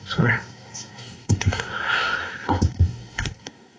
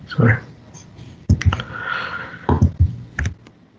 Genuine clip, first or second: second